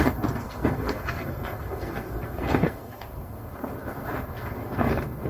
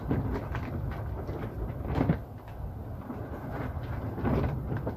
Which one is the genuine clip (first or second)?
second